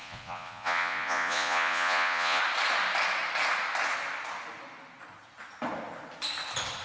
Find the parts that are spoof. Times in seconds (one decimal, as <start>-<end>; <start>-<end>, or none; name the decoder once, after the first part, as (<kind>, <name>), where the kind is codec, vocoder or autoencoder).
0.0-2.4 (vocoder, Vocos)